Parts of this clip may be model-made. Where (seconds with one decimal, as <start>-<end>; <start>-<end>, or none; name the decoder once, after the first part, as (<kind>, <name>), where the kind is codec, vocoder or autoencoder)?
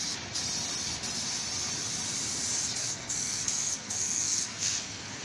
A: 2.8-5.2 (codec, SNAC)